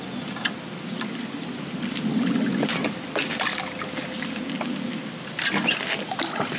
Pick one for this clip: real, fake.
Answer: real